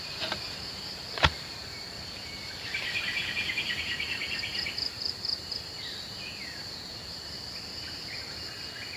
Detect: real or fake fake